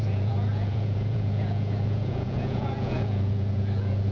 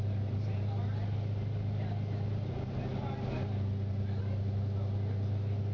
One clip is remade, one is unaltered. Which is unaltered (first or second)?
second